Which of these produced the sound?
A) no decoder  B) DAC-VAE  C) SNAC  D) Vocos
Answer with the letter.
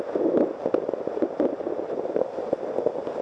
A